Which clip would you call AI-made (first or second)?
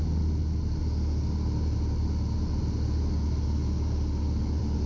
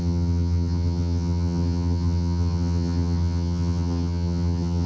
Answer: second